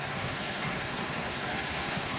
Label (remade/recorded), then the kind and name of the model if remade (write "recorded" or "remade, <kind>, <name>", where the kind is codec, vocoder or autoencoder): remade, codec, SNAC